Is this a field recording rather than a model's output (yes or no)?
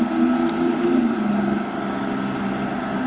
yes